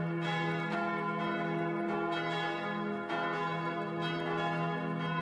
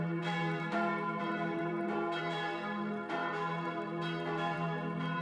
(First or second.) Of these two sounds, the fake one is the second